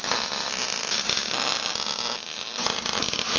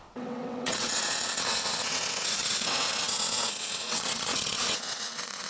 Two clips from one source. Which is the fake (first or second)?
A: second